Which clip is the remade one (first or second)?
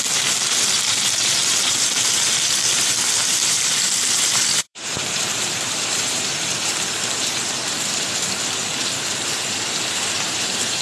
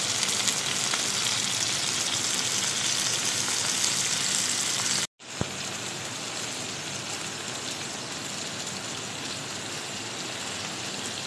first